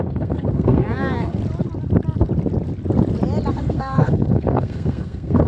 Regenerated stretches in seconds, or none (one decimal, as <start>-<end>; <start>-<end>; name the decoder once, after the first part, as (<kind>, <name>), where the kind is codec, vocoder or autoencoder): 0.0-1.4 (codec, SNAC); 3.5-5.5